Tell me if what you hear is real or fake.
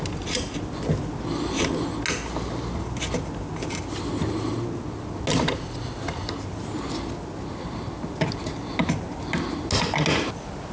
real